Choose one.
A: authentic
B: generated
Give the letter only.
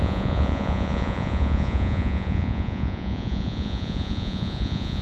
B